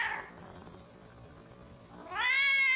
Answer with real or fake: real